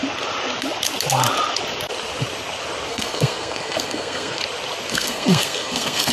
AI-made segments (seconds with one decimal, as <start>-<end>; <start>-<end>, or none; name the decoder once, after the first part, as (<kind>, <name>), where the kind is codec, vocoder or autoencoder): 2.9-4.4 (codec, SNAC); 4.9-6.1